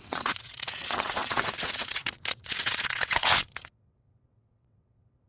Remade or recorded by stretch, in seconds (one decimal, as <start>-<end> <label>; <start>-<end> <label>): 0.0-5.3 remade